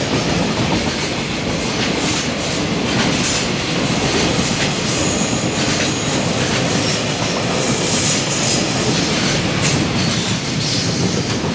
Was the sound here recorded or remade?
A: recorded